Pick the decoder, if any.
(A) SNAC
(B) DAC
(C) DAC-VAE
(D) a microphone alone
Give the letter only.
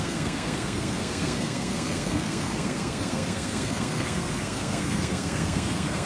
A